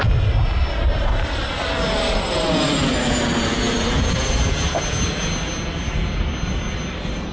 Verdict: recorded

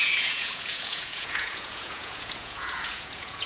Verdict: remade